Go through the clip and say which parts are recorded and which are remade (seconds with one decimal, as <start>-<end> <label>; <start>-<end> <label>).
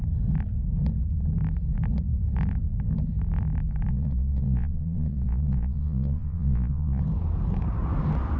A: 0.0-3.9 recorded; 3.9-7.0 remade; 7.0-8.4 recorded